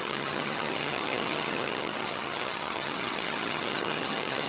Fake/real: fake